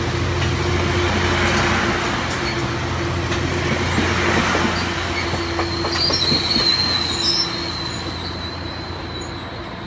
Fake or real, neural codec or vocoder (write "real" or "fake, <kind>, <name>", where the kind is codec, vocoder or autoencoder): real